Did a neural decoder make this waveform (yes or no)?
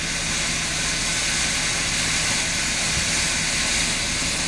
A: no